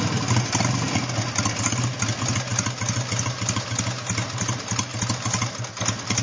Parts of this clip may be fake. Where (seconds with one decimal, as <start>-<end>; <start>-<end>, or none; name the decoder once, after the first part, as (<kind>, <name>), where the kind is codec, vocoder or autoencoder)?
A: none